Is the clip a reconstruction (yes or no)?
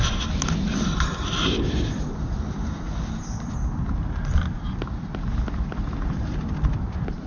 no